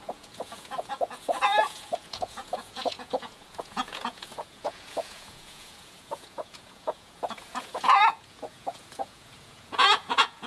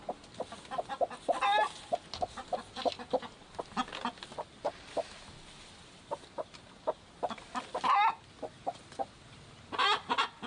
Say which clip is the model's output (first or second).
first